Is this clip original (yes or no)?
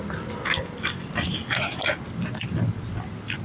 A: yes